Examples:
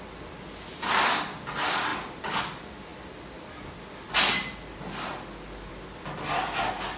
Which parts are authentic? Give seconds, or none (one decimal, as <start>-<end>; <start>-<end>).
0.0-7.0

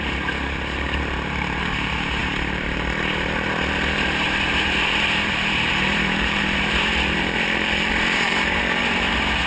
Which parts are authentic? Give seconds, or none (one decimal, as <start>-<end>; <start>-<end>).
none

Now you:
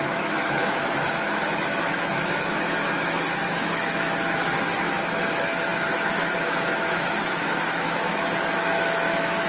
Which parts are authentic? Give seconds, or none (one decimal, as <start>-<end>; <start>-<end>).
none

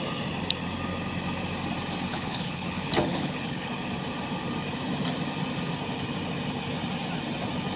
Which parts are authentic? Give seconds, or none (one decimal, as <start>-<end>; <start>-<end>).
0.0-2.1; 3.7-7.8